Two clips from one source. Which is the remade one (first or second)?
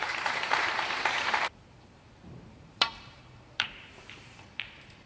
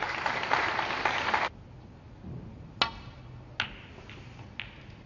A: first